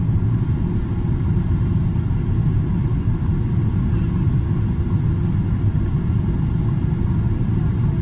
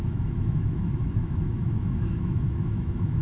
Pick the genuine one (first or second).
first